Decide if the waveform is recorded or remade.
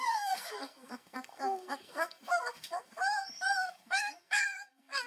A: remade